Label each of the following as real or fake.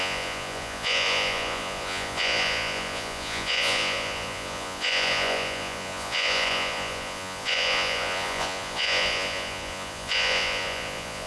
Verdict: fake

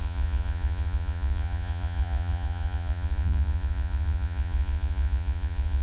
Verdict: fake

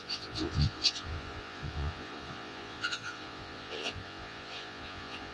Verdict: fake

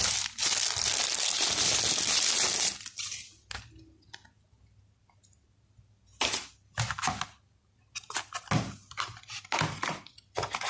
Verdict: real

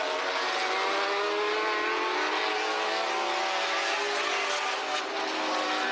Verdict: real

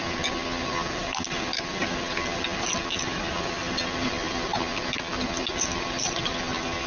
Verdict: real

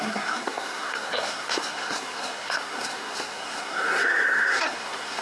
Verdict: fake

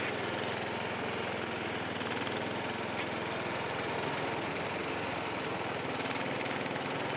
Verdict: real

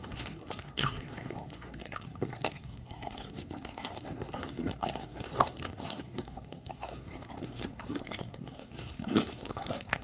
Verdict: fake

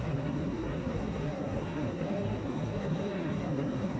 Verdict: fake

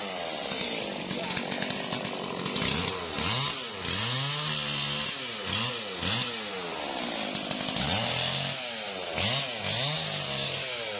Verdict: real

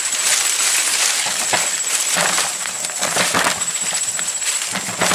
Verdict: real